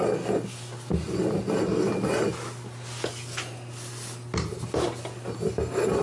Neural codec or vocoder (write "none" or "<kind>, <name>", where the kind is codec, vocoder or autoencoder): none